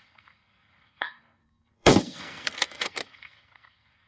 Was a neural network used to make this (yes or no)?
yes